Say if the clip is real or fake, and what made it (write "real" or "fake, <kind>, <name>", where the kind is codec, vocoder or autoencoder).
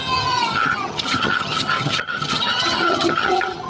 fake, vocoder, HiFi-GAN